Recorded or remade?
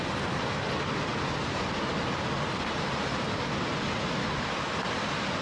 recorded